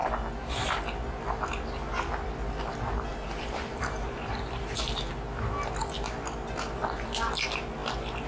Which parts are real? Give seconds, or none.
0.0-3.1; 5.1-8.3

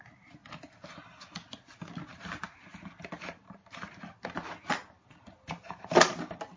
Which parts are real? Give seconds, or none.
0.0-0.4; 1.0-6.6

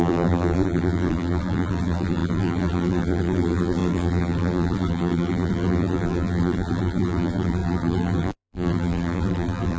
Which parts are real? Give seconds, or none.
none

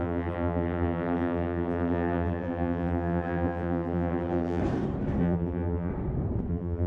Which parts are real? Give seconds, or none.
4.6-5.2; 5.9-6.5